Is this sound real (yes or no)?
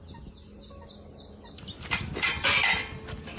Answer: yes